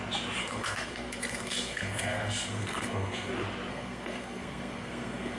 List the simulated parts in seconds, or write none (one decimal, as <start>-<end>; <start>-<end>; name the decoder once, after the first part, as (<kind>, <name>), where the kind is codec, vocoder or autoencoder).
0.4-3.3 (codec, SNAC); 3.7-5.4